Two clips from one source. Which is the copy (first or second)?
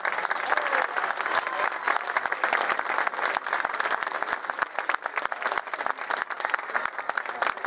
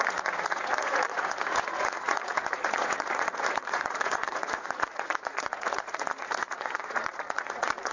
second